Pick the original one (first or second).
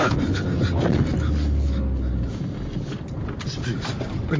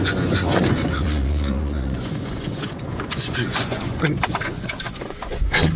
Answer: first